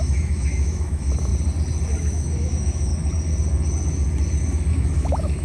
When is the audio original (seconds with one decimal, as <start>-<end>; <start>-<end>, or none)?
1.3-1.9; 2.9-4.7